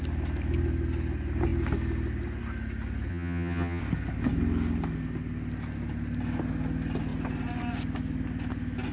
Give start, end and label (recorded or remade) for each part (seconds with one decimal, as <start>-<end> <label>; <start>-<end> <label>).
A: 0.0-3.1 recorded; 3.1-3.8 remade; 3.8-8.9 recorded